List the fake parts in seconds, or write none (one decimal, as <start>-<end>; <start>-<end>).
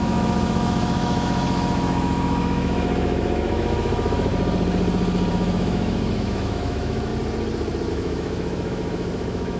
0.0-4.3; 5.3-7.1; 7.9-9.6